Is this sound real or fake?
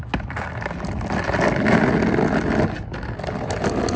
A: real